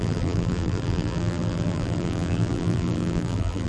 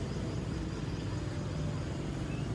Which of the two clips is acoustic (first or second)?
second